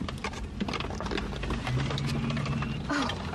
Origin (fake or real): real